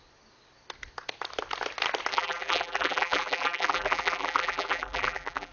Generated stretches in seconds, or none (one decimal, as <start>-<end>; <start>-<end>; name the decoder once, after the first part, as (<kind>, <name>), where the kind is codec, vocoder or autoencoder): 2.1-5.5 (vocoder, BigVGAN v2)